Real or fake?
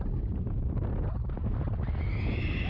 real